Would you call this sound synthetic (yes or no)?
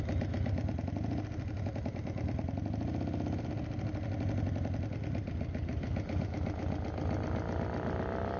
no